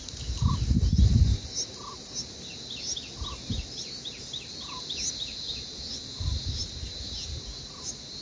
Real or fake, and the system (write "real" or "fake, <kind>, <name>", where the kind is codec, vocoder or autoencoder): real